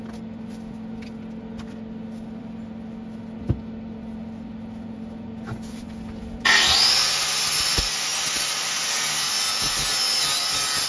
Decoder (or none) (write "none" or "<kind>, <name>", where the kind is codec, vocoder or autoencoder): none